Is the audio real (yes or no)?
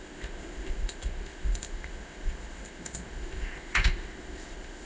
no